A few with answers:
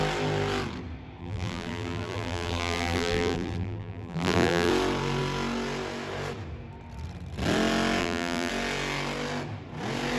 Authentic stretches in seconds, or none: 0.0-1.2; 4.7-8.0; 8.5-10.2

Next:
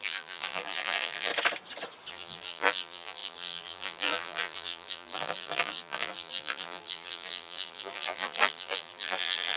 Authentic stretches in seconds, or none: 1.3-2.1

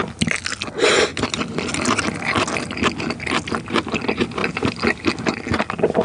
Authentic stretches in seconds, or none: 0.0-6.0